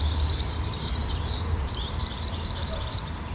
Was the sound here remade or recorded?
remade